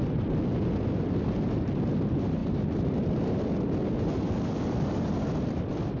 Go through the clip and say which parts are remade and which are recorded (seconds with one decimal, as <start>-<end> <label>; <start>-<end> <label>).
0.0-6.0 recorded